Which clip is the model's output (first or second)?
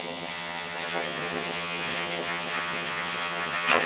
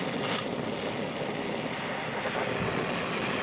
first